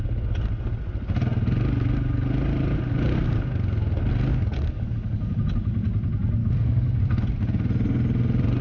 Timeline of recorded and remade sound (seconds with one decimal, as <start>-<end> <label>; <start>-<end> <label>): 0.0-4.3 recorded; 4.3-5.4 remade; 5.4-6.4 recorded; 6.4-7.0 remade; 7.0-8.6 recorded